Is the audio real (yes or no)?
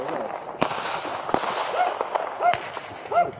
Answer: yes